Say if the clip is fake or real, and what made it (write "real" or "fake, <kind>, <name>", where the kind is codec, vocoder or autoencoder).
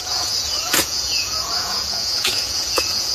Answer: fake, vocoder, Vocos